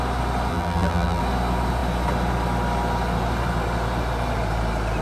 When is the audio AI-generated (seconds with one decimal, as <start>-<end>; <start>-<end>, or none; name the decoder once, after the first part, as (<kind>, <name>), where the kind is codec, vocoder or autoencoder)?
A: 0.5-1.2 (vocoder, BigVGAN v2)